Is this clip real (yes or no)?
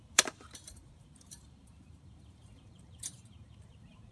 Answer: no